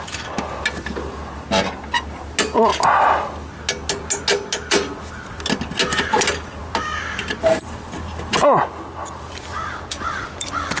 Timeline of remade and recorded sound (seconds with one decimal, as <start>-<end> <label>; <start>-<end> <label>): 0.0-10.8 recorded